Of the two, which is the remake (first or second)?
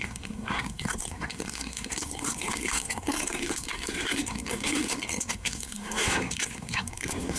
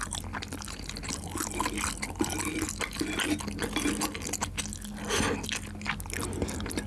first